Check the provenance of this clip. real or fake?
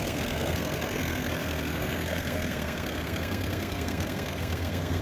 fake